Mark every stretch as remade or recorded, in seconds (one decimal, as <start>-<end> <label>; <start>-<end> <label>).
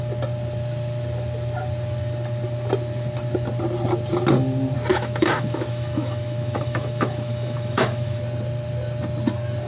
0.0-4.9 recorded; 4.9-8.2 remade; 8.2-9.7 recorded